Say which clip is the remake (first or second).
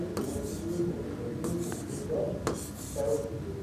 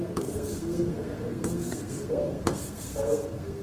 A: second